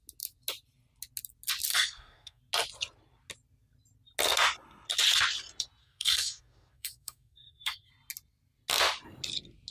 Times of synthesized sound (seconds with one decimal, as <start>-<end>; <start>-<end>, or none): 1.7-2.4; 5.8-7.9

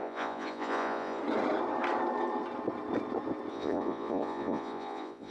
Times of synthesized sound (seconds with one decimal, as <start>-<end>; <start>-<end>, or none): 0.0-1.2; 3.5-5.3

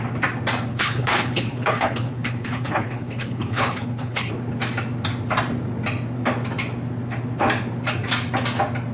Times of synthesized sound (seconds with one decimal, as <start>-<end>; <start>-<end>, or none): 0.7-4.3